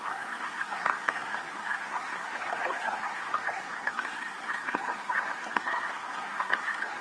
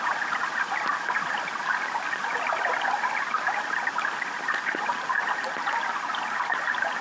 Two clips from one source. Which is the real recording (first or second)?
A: second